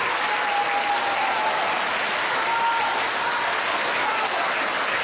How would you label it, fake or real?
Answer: real